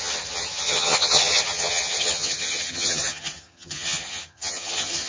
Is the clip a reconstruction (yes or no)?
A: yes